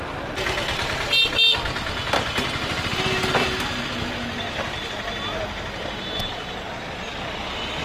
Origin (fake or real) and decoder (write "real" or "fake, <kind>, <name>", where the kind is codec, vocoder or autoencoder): real